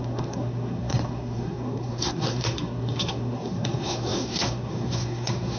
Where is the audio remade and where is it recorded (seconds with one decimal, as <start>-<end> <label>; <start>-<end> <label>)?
0.0-5.6 remade